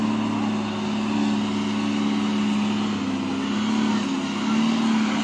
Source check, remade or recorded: recorded